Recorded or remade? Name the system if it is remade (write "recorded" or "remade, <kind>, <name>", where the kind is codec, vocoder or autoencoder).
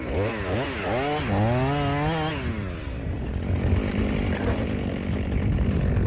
recorded